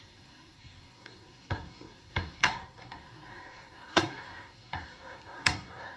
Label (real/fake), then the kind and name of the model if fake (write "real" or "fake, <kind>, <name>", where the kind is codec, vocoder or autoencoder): fake, codec, SNAC